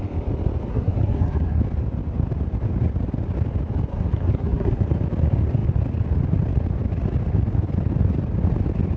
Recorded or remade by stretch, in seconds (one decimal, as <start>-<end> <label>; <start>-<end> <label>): 0.0-0.7 recorded; 0.7-1.6 remade; 1.6-3.9 recorded; 3.9-4.8 remade; 4.8-9.0 recorded